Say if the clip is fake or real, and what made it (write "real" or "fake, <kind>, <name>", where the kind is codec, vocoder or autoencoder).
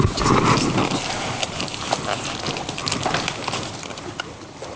real